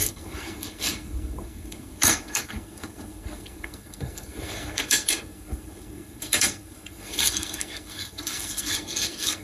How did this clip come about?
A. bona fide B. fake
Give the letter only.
B